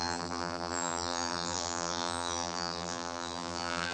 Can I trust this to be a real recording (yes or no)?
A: no